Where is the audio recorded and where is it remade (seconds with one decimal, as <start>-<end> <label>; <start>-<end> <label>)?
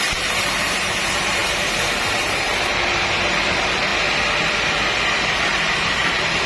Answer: 0.0-3.9 remade; 3.9-5.3 recorded; 5.3-6.5 remade